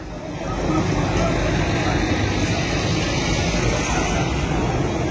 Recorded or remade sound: recorded